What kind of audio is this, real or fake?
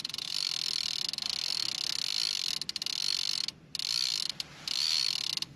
real